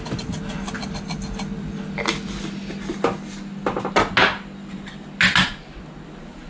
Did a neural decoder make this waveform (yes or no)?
no